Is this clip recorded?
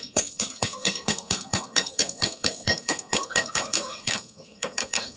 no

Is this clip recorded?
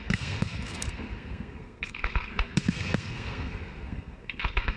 no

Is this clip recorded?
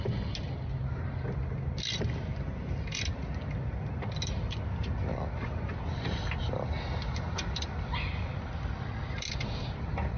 yes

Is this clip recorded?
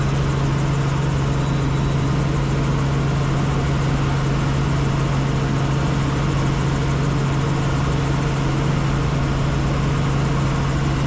yes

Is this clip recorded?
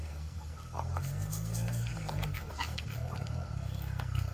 no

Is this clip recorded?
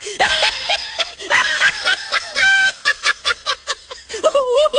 no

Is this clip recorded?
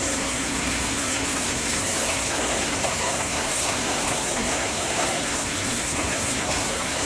no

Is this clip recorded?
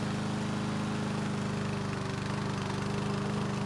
yes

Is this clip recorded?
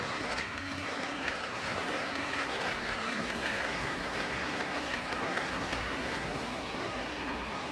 no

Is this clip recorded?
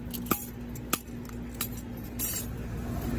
yes